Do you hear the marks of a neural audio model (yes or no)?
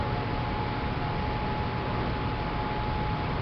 no